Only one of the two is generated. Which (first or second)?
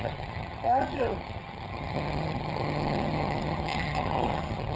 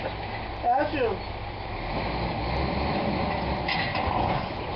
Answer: first